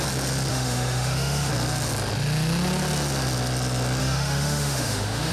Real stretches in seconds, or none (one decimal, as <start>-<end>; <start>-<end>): 0.0-0.5; 1.5-4.0